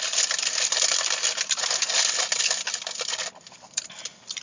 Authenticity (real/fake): real